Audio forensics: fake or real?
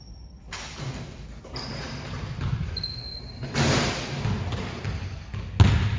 real